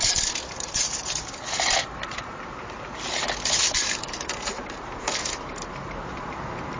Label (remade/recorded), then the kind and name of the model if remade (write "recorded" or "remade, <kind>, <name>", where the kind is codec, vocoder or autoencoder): remade, vocoder, BigVGAN v2